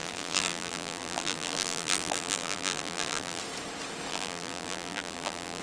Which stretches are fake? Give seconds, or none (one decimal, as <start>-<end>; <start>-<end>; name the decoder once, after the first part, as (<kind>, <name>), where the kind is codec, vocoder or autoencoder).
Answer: 0.0-3.4 (vocoder, BigVGAN v2); 4.1-5.6